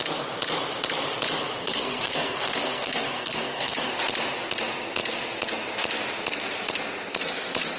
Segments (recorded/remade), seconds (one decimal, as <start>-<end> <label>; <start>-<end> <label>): 0.0-1.6 recorded; 1.6-3.9 remade; 3.9-7.8 recorded